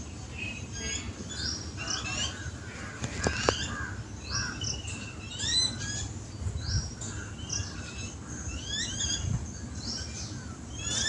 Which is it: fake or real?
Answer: real